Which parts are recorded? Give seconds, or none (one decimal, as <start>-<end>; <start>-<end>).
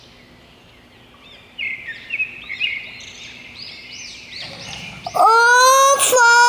0.0-1.6; 5.2-6.5